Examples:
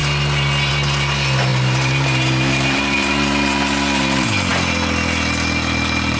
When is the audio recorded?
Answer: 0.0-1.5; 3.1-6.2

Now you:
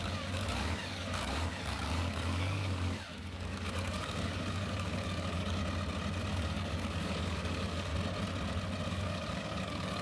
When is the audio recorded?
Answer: 5.6-6.3; 7.9-8.9